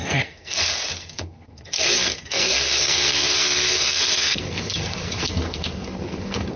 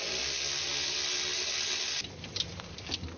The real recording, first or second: second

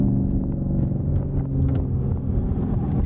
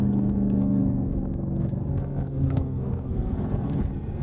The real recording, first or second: first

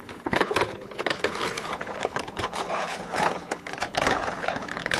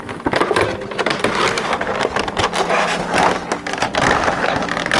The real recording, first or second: second